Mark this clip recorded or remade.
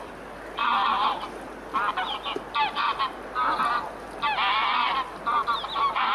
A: recorded